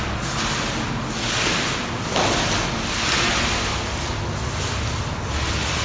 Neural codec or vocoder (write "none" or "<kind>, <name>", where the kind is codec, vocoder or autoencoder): none